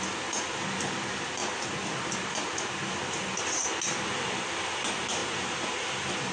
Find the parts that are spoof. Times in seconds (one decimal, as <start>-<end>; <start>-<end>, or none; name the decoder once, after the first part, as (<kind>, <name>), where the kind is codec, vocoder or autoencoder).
none